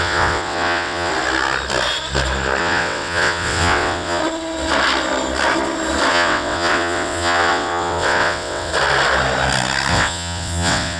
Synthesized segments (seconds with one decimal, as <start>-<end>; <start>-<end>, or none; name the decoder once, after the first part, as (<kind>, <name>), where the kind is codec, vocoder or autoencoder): 0.0-1.1 (vocoder, WaveNeXt); 2.6-4.2; 6.1-8.7; 9.9-11.0